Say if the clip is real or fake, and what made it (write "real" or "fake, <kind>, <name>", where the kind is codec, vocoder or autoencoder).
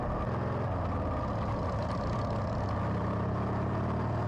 real